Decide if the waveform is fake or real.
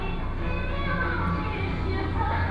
real